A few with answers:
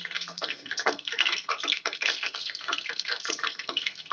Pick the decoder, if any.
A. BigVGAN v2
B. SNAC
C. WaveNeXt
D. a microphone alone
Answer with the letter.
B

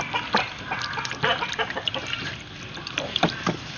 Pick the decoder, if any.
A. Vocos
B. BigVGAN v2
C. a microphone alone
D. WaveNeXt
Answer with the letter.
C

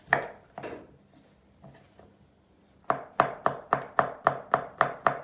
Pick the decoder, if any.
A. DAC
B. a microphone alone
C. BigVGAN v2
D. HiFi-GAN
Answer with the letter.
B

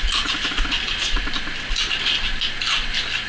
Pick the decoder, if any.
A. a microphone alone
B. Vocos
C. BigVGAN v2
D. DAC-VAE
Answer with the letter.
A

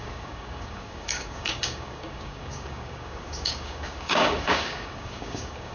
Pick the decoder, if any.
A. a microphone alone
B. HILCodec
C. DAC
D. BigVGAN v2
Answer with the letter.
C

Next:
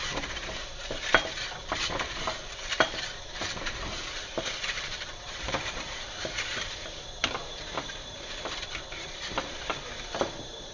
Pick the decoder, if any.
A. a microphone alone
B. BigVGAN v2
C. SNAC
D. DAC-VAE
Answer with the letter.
B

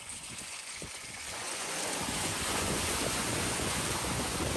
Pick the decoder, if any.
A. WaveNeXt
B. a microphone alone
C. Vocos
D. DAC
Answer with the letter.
C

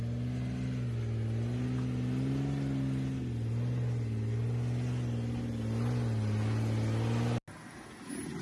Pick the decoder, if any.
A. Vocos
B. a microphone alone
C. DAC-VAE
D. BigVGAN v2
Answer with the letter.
B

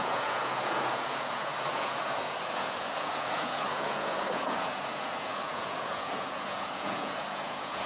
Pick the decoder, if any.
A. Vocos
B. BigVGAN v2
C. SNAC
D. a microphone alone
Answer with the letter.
A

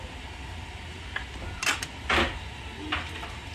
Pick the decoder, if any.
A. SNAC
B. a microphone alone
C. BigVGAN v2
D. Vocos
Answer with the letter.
B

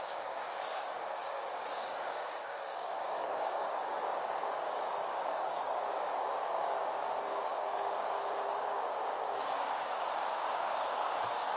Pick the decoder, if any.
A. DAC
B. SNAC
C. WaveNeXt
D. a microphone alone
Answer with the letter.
A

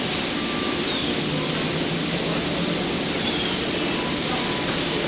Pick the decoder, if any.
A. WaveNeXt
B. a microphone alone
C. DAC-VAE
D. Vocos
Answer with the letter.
B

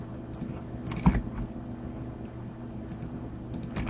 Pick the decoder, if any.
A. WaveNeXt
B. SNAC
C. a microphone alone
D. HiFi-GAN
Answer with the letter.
C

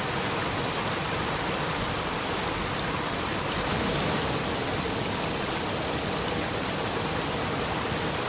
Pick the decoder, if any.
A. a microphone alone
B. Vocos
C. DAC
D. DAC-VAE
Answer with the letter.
A